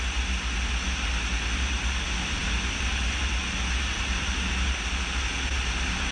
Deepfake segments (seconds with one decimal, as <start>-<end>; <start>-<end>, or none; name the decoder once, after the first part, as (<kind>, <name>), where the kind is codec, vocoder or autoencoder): none